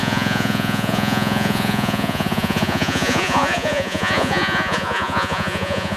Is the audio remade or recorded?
remade